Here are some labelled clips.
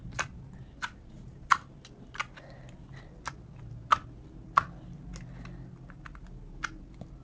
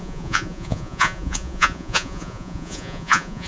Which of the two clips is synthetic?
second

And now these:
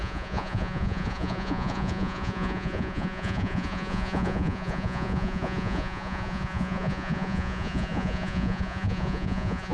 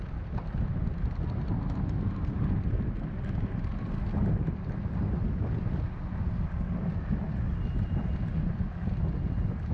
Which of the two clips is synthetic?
first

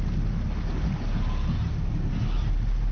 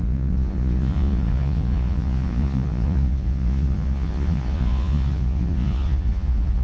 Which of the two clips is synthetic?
second